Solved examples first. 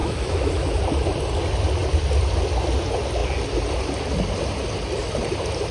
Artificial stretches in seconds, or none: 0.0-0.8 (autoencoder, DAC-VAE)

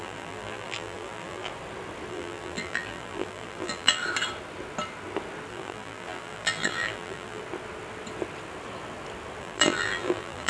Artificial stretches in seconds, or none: 0.0-1.5 (vocoder, BigVGAN v2); 2.1-4.0; 5.5-7.4; 9.4-10.5

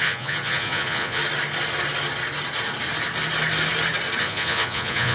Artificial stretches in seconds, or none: 0.0-1.2 (vocoder, Vocos); 4.2-5.1

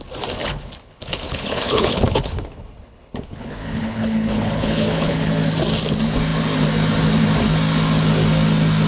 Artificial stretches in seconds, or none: 0.4-5.3 (codec, HILCodec)

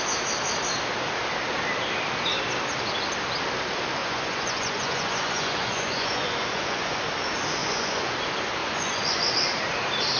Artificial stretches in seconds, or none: 4.0-7.0 (vocoder, Vocos); 7.6-8.1; 8.6-9.3